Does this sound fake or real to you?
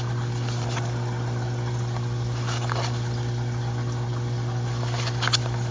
real